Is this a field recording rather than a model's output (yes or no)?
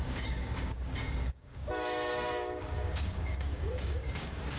no